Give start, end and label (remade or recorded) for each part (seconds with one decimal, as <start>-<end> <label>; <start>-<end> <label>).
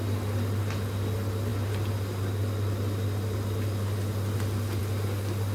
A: 0.0-5.5 recorded